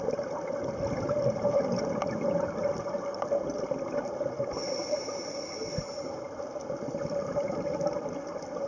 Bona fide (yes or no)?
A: no